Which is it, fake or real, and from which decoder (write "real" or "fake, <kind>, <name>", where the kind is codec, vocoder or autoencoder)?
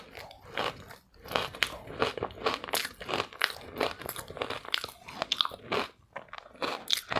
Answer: real